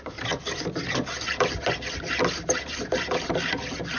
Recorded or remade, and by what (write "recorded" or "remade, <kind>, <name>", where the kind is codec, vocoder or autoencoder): recorded